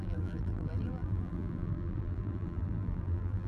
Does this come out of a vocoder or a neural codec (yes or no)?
yes